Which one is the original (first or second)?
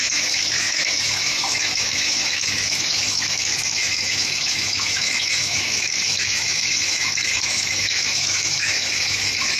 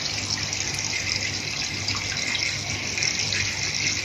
second